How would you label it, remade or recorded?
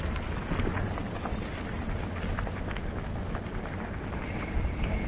recorded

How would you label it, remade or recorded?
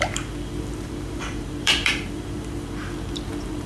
remade